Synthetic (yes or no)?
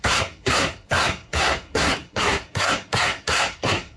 yes